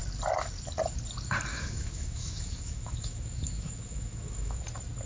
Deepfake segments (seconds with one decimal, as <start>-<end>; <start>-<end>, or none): 1.5-4.6